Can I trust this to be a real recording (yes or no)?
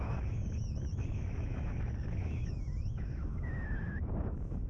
no